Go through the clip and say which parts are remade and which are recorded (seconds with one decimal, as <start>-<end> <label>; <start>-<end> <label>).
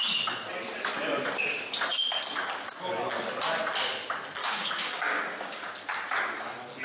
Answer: 0.0-4.4 recorded; 4.4-5.7 remade; 5.7-6.8 recorded